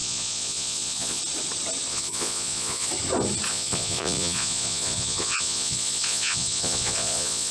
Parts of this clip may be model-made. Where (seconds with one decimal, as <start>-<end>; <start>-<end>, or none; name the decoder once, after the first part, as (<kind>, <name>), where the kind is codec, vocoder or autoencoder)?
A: 0.0-1.2 (vocoder, Vocos); 1.9-2.9; 3.5-7.5